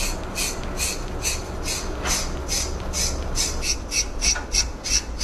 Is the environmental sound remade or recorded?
recorded